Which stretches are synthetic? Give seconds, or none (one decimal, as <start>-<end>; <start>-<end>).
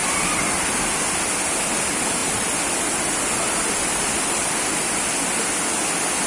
none